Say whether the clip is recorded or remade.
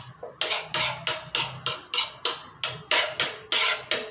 recorded